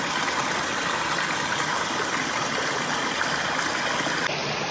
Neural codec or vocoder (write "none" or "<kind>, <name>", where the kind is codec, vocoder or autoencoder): none